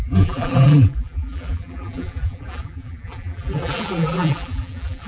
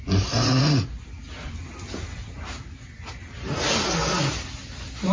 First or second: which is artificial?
first